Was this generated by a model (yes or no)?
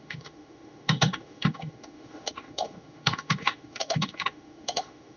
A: yes